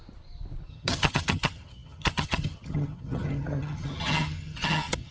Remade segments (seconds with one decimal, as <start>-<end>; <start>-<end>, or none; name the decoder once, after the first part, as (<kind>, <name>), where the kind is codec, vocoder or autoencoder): 0.7-5.1 (vocoder, HiFi-GAN)